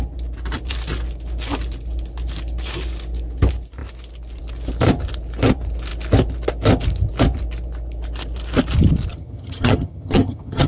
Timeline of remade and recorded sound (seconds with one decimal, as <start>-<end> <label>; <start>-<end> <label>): 0.0-9.1 recorded; 9.1-10.7 remade